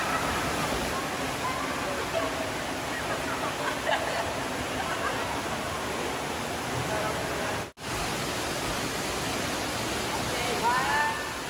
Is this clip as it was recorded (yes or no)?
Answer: yes